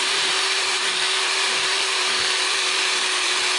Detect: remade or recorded remade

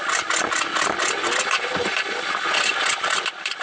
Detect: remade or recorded remade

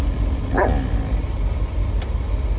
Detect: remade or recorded recorded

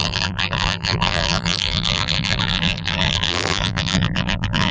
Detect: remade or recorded remade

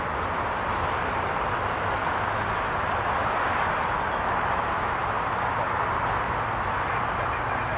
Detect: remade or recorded recorded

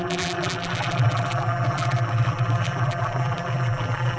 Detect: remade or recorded remade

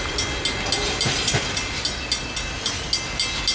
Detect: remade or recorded recorded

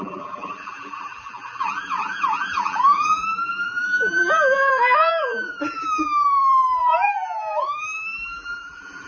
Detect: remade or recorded remade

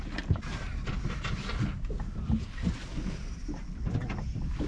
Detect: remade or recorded recorded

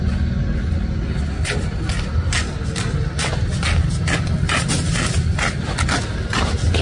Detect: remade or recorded recorded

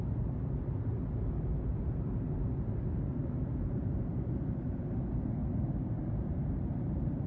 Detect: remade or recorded remade